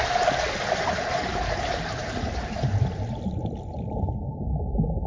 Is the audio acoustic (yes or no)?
yes